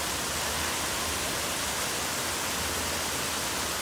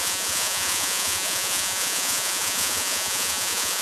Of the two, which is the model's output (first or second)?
second